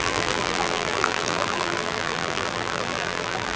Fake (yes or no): yes